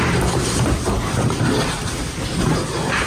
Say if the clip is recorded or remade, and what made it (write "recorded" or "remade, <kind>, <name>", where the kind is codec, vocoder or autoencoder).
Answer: recorded